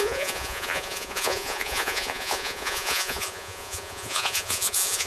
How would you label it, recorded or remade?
remade